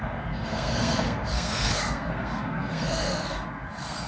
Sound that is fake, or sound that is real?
fake